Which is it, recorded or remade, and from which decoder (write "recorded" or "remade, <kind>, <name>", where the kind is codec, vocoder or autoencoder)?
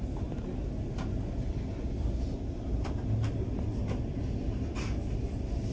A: recorded